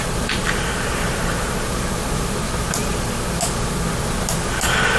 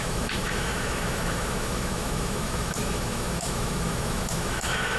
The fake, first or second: second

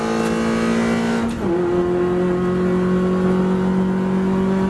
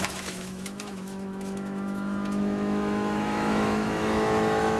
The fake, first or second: second